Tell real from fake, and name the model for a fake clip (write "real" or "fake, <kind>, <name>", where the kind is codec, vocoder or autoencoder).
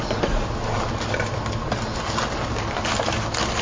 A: real